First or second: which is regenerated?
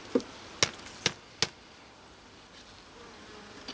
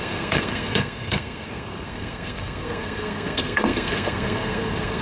second